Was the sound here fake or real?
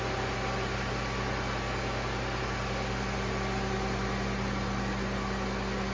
real